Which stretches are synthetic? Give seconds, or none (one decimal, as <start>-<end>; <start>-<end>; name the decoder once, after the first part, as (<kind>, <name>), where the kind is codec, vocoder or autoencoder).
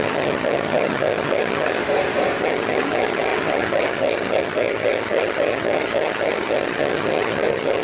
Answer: 0.0-1.8 (vocoder, HiFi-GAN); 2.4-7.8